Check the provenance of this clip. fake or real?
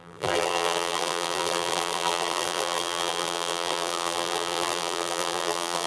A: fake